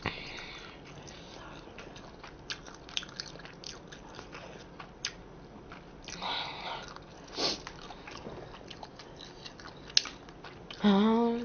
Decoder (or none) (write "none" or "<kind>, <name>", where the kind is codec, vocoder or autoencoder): none